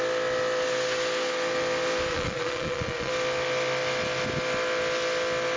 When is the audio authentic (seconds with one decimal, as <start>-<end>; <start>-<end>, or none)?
0.0-2.1; 3.1-5.6